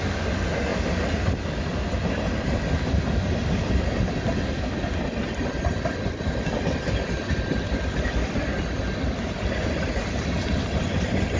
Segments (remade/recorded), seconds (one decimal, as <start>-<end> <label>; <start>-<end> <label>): 0.0-0.7 recorded; 0.7-4.6 remade; 4.6-11.4 recorded